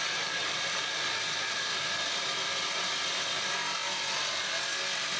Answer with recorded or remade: recorded